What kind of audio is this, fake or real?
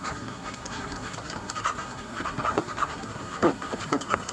fake